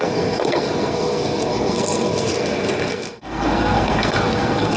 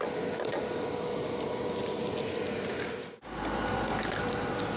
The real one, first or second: second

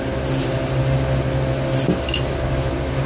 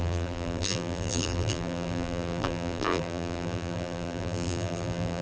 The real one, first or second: first